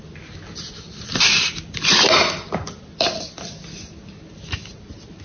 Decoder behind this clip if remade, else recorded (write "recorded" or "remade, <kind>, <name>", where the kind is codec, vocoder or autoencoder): recorded